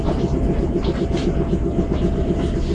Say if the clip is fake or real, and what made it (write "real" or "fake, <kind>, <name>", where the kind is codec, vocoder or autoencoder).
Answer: real